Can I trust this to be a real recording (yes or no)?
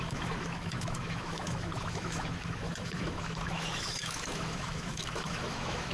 no